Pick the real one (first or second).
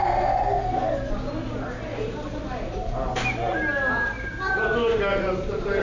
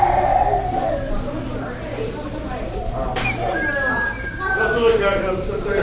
first